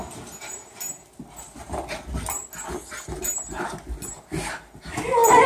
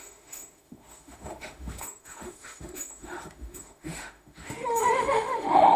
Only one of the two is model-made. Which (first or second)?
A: second